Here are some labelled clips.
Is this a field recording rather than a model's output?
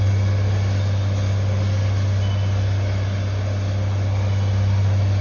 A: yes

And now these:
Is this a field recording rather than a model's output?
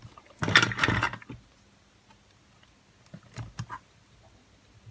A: yes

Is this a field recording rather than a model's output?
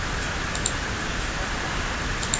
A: yes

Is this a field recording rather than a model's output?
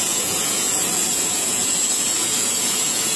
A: no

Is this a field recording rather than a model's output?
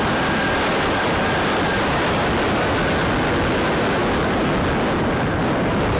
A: yes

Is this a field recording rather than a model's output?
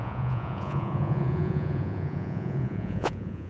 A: no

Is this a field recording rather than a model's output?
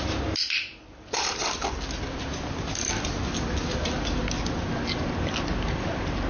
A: yes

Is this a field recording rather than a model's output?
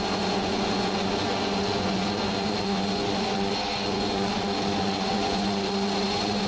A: no